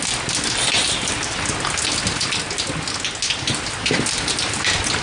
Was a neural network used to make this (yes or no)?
no